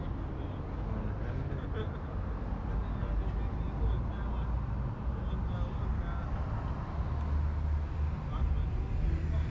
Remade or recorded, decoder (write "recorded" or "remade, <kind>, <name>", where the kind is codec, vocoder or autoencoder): recorded